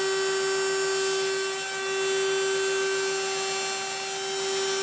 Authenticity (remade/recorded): recorded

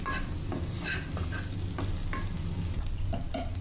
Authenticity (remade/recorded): recorded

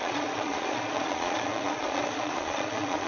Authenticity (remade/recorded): remade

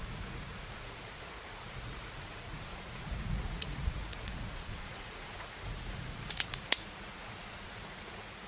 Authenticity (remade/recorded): remade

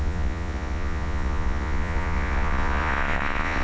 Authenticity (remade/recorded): remade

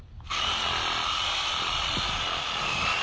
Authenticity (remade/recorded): recorded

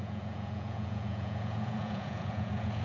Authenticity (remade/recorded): remade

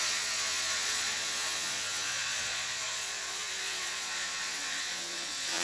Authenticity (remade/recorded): remade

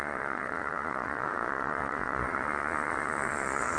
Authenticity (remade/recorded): remade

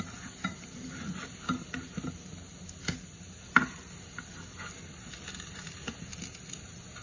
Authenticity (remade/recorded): recorded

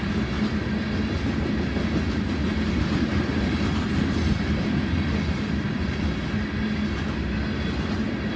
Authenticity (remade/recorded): recorded